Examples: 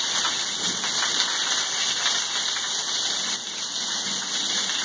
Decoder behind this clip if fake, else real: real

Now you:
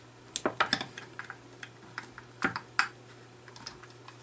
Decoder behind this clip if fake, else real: real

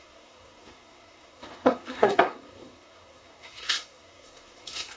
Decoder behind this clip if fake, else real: fake, codec, SNAC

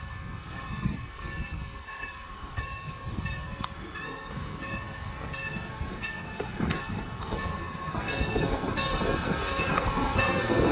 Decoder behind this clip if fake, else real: fake, codec, SNAC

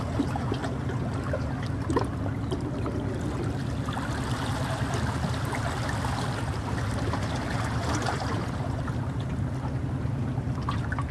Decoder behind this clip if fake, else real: real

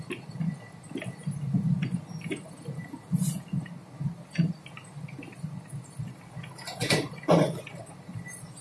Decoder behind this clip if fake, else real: real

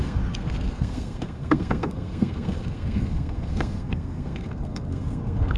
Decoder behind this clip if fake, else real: fake, codec, SNAC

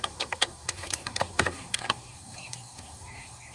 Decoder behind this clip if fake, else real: fake, codec, SNAC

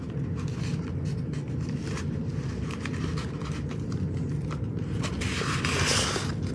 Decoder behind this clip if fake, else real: real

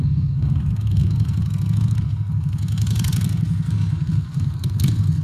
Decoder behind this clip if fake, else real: fake, codec, SNAC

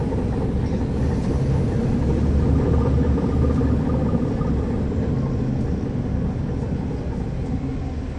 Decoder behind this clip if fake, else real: real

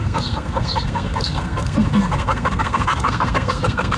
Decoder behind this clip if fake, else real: fake, codec, SNAC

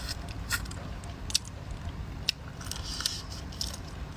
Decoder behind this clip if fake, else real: real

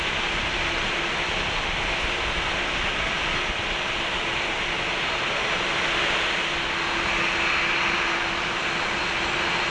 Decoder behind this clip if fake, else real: real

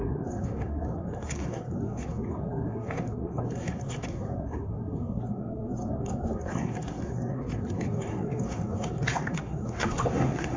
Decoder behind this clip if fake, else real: fake, codec, SNAC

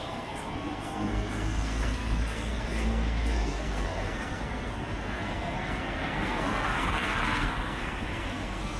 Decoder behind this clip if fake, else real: fake, codec, SNAC